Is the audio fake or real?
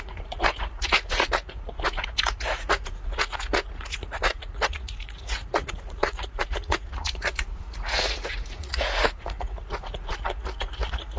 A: fake